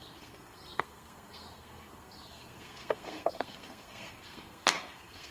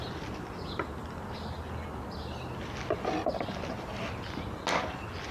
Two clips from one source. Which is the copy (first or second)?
first